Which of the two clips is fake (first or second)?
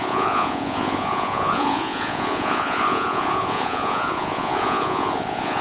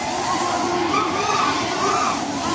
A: first